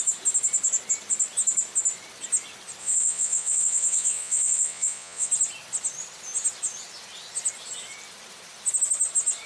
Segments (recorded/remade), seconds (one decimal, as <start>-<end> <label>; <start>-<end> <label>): 0.0-2.8 recorded; 2.8-5.3 remade; 5.3-9.5 recorded